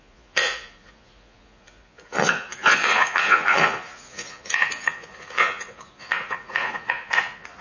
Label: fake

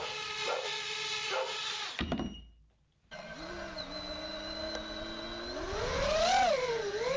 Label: real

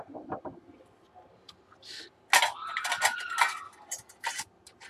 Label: real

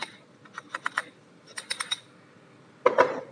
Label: real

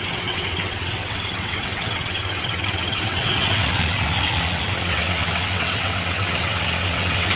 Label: fake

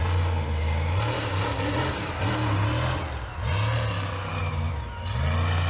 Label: real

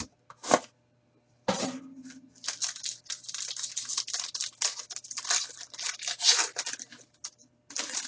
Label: real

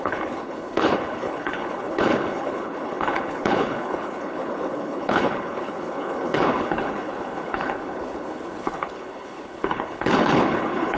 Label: fake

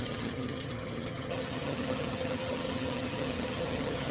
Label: fake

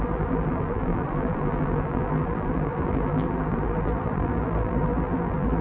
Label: fake